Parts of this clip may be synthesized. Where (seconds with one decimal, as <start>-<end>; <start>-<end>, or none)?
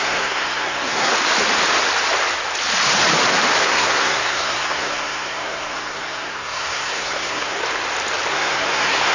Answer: 0.0-1.1; 3.6-7.6; 8.3-9.1